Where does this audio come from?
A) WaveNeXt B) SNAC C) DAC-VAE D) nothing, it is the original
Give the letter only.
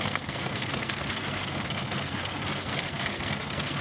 B